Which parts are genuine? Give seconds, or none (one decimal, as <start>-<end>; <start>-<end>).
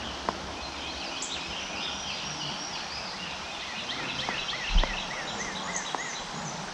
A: 0.0-6.7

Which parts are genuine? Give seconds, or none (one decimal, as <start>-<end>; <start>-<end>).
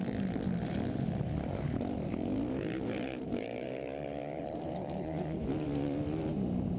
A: 3.9-4.4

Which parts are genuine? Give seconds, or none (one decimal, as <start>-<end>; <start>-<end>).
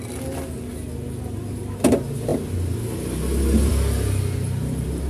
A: 0.0-5.1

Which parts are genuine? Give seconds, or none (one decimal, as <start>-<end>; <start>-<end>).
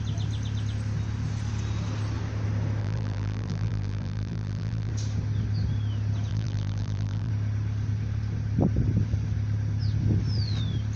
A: 0.0-2.8; 4.9-6.3; 7.3-11.0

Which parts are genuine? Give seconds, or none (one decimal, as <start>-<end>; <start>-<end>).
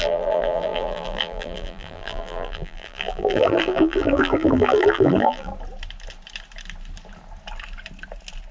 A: 5.5-8.5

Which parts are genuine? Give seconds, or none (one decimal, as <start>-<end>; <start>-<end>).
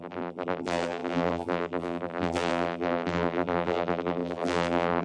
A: none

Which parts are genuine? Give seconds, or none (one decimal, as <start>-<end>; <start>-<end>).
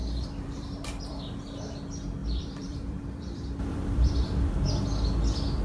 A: 1.2-2.2; 4.5-5.6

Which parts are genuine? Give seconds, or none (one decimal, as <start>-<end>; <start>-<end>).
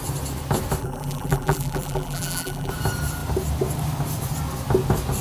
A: 0.0-0.8; 2.7-5.2